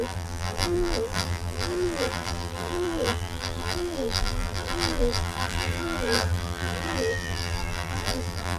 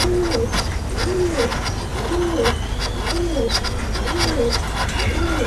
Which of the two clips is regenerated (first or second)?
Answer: first